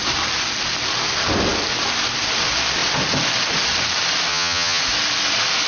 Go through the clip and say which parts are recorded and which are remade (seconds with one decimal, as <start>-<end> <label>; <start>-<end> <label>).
0.0-4.3 recorded; 4.3-4.8 remade; 4.8-5.7 recorded